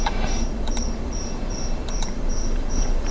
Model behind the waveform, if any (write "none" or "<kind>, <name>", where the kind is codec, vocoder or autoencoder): vocoder, BigVGAN v2